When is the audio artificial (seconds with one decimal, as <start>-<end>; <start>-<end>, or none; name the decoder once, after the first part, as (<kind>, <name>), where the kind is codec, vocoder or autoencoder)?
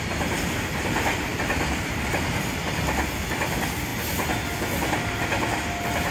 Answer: none